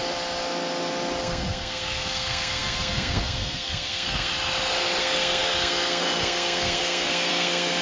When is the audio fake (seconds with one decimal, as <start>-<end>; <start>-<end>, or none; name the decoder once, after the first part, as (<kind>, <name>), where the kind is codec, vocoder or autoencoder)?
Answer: 1.2-4.3 (codec, SNAC); 5.0-7.8